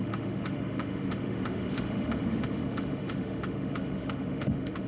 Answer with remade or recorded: remade